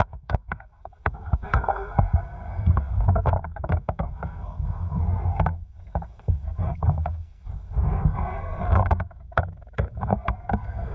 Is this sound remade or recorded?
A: remade